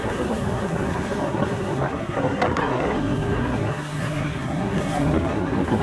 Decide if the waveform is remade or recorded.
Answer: remade